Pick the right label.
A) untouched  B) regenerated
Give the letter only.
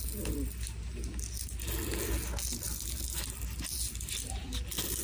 A